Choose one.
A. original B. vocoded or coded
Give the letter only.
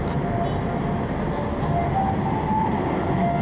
A